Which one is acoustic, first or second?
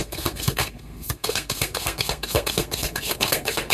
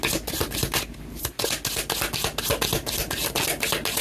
second